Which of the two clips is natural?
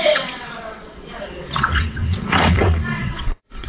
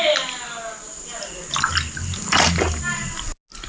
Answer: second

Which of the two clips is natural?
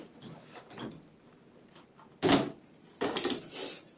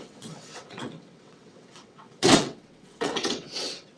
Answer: first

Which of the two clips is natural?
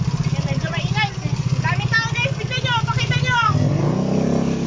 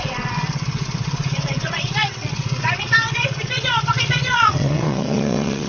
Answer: first